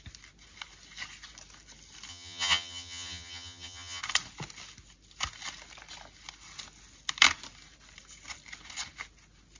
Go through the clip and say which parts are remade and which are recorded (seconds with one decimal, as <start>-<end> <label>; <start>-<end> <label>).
0.0-2.1 recorded; 2.1-4.0 remade; 4.0-9.6 recorded